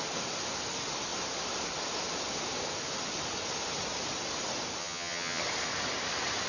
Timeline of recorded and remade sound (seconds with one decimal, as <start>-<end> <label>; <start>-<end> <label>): 0.0-4.8 recorded; 4.8-5.4 remade; 5.4-6.5 recorded